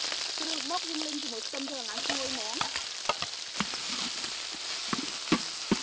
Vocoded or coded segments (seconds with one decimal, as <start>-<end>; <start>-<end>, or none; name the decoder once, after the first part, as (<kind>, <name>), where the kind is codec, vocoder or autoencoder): none